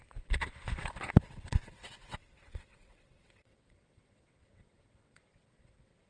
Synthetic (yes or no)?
yes